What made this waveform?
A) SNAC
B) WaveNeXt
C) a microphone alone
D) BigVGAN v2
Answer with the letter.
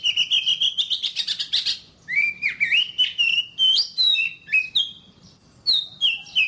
C